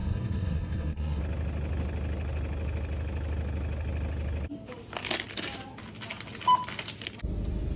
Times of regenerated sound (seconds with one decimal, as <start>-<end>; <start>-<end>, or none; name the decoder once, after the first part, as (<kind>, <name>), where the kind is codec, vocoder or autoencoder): 0.0-1.2 (codec, SNAC)